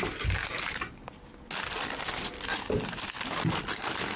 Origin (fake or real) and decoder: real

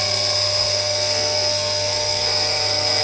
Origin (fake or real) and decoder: fake, codec, SNAC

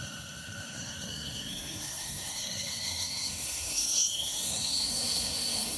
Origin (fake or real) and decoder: fake, codec, SNAC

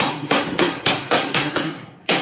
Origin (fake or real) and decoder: fake, codec, SNAC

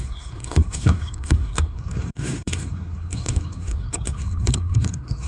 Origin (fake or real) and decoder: fake, codec, SNAC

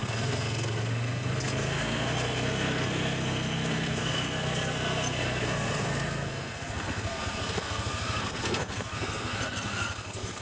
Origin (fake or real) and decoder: fake, codec, SNAC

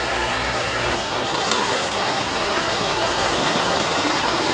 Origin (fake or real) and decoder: fake, codec, SNAC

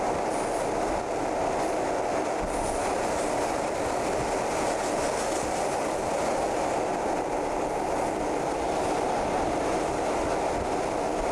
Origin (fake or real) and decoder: real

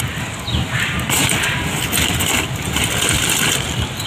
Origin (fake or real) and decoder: real